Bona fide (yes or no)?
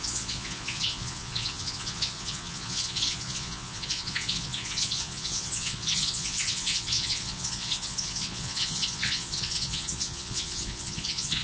no